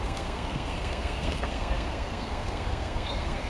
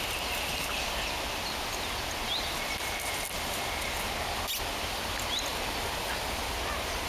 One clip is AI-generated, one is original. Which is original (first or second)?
second